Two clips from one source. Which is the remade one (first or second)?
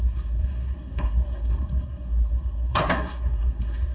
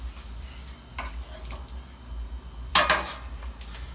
first